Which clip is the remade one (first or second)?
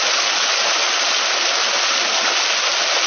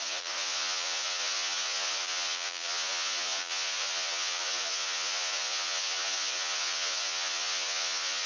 second